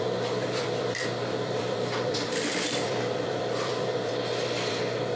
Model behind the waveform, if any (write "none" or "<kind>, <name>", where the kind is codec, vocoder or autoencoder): vocoder, BigVGAN v2